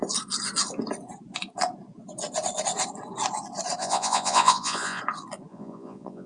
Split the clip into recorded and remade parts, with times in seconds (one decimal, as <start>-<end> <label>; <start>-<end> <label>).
0.0-3.8 recorded; 3.8-5.0 remade; 5.0-5.5 recorded; 5.5-6.3 remade